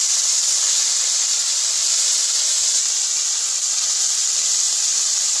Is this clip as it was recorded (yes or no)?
yes